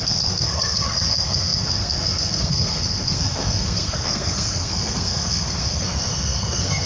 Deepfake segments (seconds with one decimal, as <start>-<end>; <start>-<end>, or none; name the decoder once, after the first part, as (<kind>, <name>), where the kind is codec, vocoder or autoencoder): 0.0-6.9 (codec, SNAC)